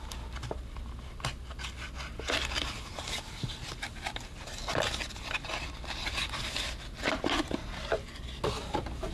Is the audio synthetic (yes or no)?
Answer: no